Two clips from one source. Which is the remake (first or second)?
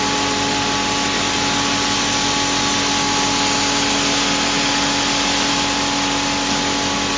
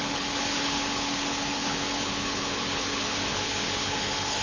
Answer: second